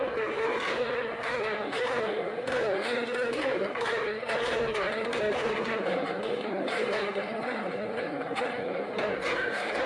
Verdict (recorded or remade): remade